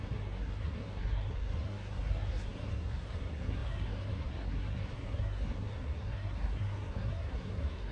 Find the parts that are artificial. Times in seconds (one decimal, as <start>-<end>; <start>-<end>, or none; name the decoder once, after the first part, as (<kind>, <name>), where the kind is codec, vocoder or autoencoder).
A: 0.0-7.9 (codec, SNAC)